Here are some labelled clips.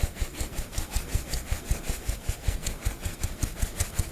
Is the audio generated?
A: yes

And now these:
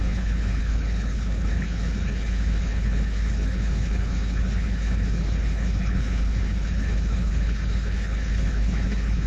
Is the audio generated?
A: yes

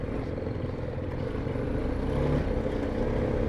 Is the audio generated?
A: no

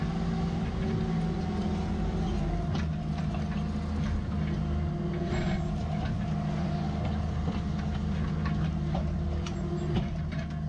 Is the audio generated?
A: no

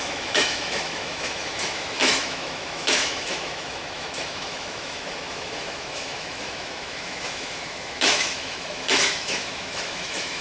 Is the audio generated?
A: yes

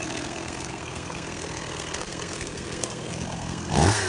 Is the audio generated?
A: yes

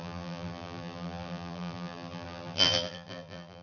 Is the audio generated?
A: yes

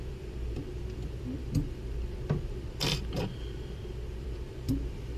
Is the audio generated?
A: yes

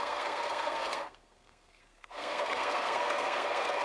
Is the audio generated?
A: yes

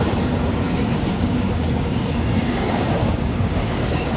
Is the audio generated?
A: yes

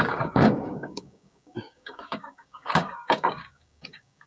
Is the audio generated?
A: yes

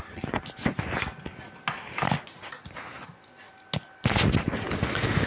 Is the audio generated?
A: no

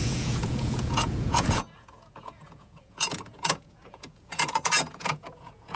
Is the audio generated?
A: yes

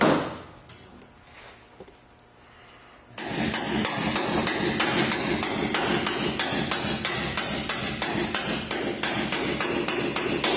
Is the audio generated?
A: no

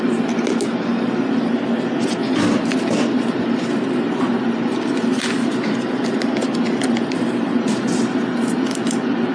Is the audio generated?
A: no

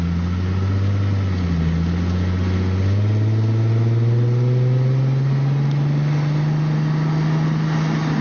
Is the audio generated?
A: no